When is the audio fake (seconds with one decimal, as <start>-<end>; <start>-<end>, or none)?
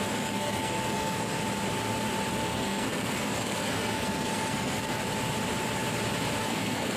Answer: 0.0-1.4; 2.3-5.0; 6.4-7.0